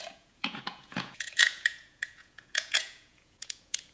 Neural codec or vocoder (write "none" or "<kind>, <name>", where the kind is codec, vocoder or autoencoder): vocoder, Vocos